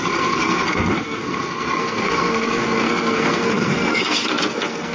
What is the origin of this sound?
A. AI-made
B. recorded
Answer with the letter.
A